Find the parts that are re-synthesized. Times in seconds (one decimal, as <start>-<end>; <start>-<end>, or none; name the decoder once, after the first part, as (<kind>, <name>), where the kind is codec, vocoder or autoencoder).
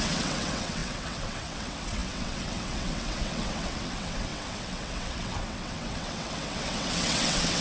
0.0-7.6 (vocoder, WaveNeXt)